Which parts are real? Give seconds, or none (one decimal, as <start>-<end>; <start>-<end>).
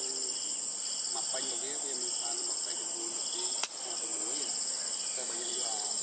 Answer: 0.0-6.0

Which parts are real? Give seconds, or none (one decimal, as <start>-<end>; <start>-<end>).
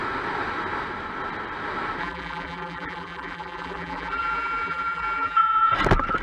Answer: 0.0-2.0; 5.7-6.2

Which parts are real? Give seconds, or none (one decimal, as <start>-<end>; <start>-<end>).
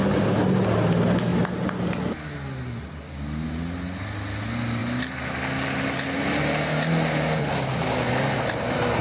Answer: 0.0-9.0